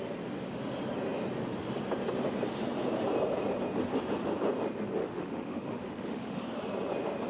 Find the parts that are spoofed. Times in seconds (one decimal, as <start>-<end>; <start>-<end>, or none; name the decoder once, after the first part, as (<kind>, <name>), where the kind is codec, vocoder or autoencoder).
5.0-6.4 (autoencoder, DAC-VAE)